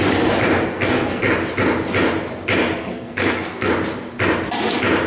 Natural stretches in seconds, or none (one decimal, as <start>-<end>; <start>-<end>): 0.0-0.7; 1.3-2.8; 3.7-5.1